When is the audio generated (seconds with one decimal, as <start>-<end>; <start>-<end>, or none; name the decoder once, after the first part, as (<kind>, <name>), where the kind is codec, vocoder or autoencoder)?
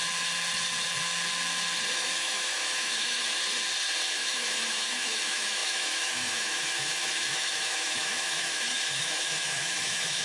1.9-3.2 (autoencoder, DAC-VAE); 4.1-10.2